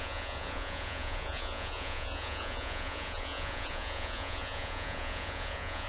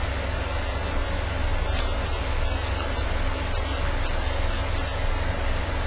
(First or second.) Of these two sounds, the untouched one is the second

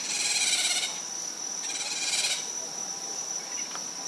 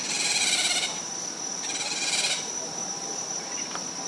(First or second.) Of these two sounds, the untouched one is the first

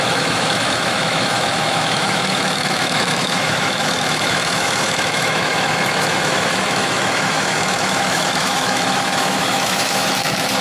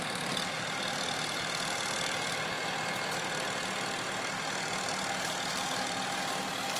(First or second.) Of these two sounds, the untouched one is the second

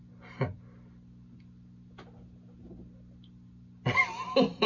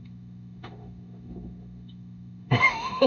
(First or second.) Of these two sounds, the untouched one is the first